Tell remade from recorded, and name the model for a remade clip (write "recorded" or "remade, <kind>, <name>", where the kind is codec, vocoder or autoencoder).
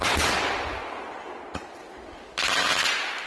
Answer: recorded